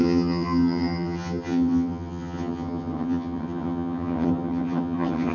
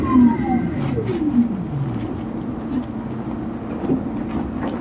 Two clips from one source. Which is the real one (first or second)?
second